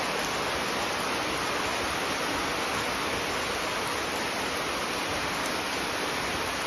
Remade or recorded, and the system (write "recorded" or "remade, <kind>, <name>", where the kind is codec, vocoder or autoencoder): recorded